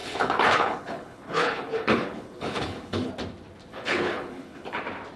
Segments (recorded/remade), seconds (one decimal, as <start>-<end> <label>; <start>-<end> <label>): 0.0-3.1 remade; 3.1-3.7 recorded; 3.7-4.8 remade; 4.8-5.2 recorded